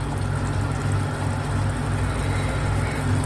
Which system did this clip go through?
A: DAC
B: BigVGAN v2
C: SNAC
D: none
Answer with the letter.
D